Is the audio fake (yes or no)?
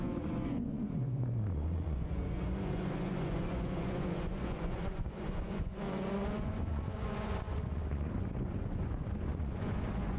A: yes